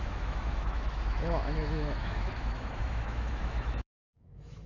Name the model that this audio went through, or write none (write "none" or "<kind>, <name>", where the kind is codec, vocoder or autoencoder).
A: autoencoder, DAC-VAE